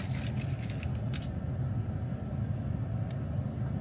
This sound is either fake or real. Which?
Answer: real